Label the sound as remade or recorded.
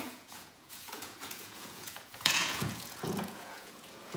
remade